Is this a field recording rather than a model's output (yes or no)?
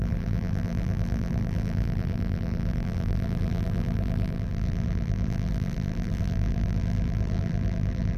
no